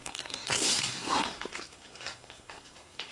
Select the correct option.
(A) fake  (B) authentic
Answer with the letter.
A